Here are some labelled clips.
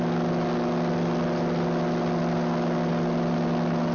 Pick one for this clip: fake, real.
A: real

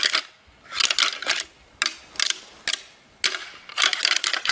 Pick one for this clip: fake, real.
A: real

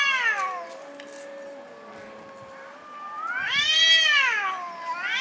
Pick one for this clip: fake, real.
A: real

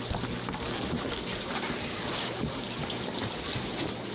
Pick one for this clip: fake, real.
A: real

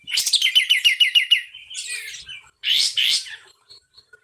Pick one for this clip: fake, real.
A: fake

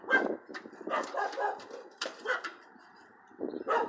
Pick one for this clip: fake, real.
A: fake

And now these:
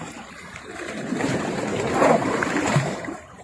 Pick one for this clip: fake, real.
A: fake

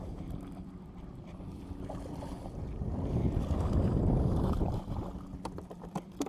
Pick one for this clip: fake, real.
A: fake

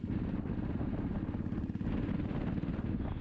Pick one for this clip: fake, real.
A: real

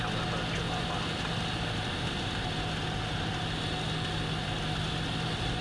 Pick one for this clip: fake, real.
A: real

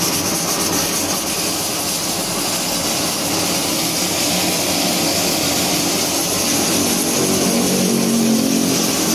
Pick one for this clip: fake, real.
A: real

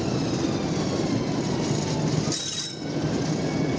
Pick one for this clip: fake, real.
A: real